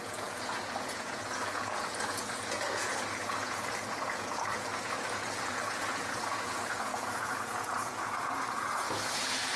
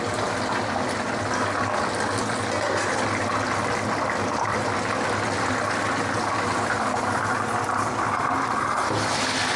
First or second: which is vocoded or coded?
first